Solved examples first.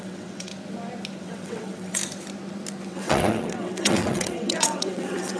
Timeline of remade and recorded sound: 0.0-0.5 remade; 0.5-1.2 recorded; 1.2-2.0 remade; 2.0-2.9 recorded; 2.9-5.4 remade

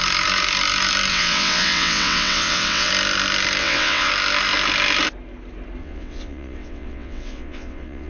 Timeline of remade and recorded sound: 0.0-1.1 recorded; 1.1-2.9 remade; 2.9-3.6 recorded; 3.6-4.1 remade; 4.1-5.8 recorded; 5.8-8.1 remade

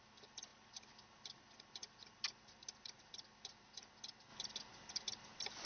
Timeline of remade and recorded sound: 0.0-5.7 recorded

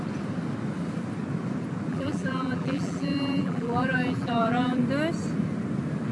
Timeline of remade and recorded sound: 0.0-1.9 recorded; 1.9-4.8 remade; 4.8-6.1 recorded

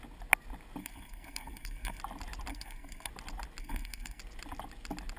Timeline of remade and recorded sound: 0.0-0.8 recorded; 0.8-2.0 remade; 2.0-2.5 recorded; 2.5-3.1 remade; 3.1-3.6 recorded; 3.6-4.2 remade; 4.2-5.2 recorded

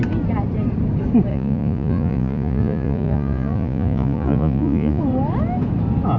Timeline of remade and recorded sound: 0.0-1.3 recorded; 1.3-5.0 remade; 5.0-6.2 recorded

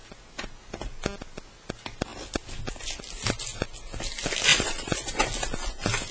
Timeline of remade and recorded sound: 0.0-4.5 recorded; 4.5-5.2 remade; 5.2-6.1 recorded